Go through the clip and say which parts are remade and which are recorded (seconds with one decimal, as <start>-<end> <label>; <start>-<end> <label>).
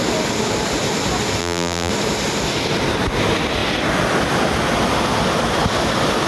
0.0-1.4 recorded; 1.4-1.9 remade; 1.9-6.3 recorded